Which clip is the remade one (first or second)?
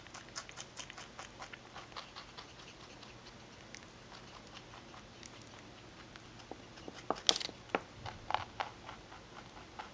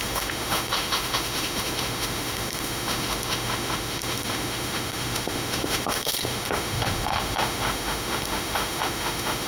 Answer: second